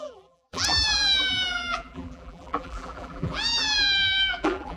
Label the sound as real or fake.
fake